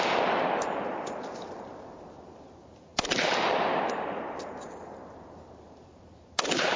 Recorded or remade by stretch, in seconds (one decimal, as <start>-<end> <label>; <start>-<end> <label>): 0.0-6.8 remade